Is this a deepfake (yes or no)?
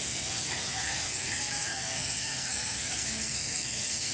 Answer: yes